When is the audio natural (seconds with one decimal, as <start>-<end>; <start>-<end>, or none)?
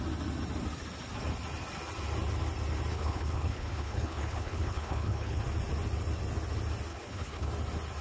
0.0-2.9; 5.4-6.9; 7.5-8.0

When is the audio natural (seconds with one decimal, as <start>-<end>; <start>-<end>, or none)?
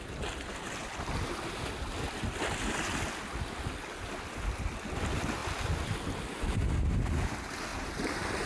0.0-7.7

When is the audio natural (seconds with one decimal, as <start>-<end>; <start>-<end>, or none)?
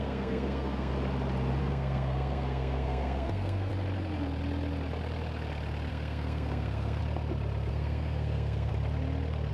0.9-1.6; 3.7-5.9; 7.0-7.7; 8.7-9.5